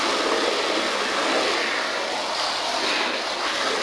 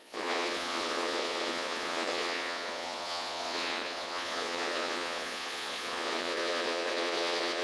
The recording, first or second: first